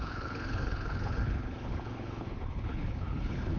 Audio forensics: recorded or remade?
remade